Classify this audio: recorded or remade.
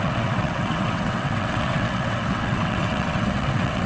remade